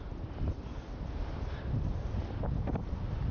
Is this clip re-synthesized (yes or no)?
no